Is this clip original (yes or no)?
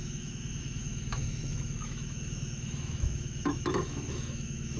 no